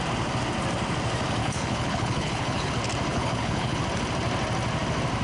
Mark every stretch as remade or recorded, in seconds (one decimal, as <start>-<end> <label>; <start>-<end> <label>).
0.0-1.4 recorded; 1.4-2.7 remade; 2.7-3.1 recorded; 3.1-3.8 remade; 3.8-5.2 recorded